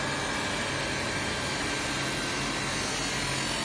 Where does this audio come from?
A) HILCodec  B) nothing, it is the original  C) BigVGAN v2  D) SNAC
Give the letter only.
B